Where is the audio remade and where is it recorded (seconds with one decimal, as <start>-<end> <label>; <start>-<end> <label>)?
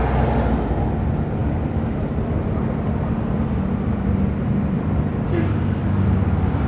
0.0-1.4 recorded; 1.4-5.3 remade; 5.3-6.7 recorded